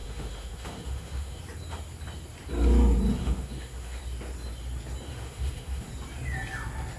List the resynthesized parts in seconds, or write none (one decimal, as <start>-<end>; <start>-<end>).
0.0-1.4; 3.2-4.0; 5.1-5.9